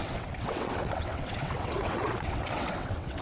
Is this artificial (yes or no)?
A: yes